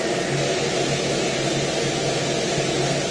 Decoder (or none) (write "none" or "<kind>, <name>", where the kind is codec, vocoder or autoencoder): none